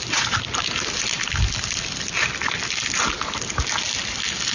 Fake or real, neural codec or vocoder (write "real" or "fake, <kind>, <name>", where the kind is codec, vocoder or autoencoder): real